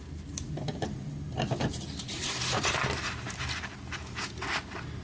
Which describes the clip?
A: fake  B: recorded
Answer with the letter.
B